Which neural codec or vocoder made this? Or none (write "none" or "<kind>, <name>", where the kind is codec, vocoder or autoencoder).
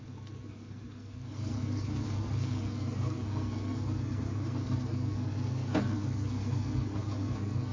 codec, SNAC